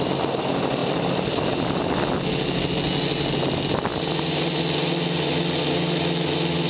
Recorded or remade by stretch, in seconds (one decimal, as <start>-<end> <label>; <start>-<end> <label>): 0.0-0.8 recorded; 0.8-1.8 remade; 1.8-6.7 recorded